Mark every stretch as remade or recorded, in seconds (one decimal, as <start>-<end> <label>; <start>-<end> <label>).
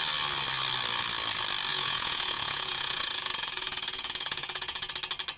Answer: 0.0-1.7 recorded; 1.7-4.9 remade; 4.9-5.4 recorded